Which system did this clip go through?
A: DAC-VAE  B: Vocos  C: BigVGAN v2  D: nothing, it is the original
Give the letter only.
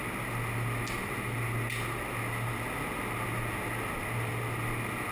D